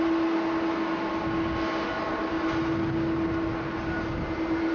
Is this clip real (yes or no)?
yes